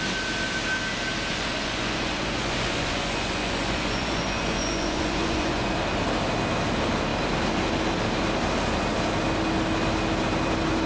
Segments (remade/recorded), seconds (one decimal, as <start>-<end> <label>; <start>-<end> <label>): 0.0-1.3 recorded; 1.3-5.7 remade; 5.7-10.9 recorded